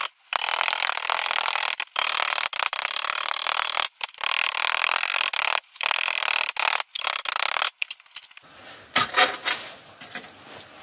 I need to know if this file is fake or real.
real